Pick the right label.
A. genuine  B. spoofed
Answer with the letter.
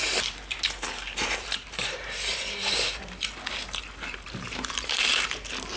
B